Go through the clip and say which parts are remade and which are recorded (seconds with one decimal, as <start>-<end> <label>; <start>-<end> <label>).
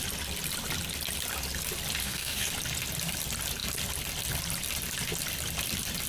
0.0-2.0 recorded; 2.0-2.5 remade; 2.5-6.1 recorded